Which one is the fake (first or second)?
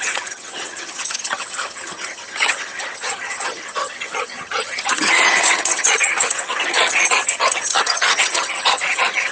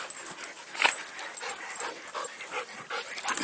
first